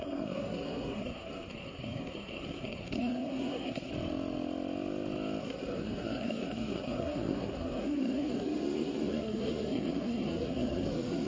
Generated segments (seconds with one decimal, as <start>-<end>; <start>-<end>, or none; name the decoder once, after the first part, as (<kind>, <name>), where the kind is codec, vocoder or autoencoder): 0.0-3.9 (codec, SNAC); 5.4-11.3